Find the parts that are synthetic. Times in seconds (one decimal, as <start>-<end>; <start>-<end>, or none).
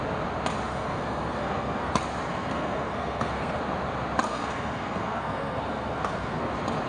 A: 0.7-1.9; 2.3-3.6; 4.3-6.5